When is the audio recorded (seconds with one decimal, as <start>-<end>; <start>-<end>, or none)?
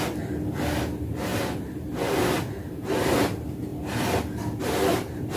0.0-5.4